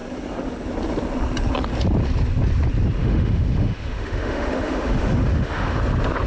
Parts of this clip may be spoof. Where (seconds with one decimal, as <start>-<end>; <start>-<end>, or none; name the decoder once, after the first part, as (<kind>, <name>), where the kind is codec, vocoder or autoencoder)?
3.0-5.8 (autoencoder, DAC-VAE)